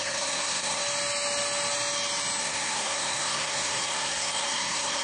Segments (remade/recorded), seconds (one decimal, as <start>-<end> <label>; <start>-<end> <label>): 0.0-0.8 remade; 0.8-2.4 recorded; 2.4-5.0 remade